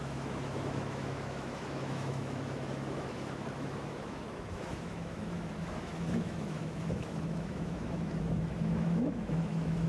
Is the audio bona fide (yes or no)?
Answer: no